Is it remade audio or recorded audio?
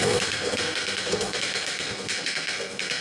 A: remade